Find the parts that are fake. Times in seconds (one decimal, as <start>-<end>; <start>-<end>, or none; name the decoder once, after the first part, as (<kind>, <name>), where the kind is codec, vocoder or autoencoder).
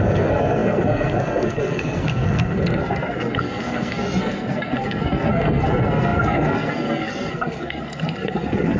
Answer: 0.0-8.8 (codec, SNAC)